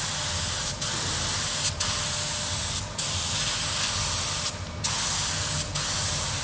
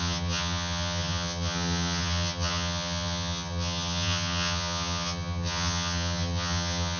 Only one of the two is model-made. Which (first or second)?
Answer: second